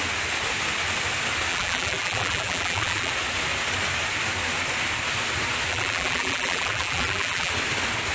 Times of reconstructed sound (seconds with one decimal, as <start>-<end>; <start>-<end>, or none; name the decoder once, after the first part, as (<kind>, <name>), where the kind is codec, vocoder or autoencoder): 1.5-3.1 (vocoder, BigVGAN v2); 5.7-7.5